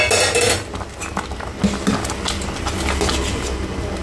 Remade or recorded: recorded